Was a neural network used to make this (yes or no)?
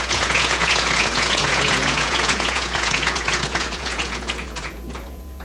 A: yes